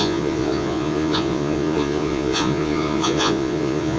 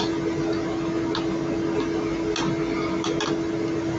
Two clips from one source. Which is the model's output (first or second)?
first